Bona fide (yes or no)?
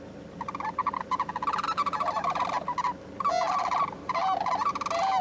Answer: yes